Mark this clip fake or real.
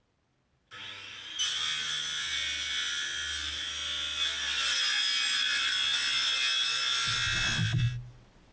real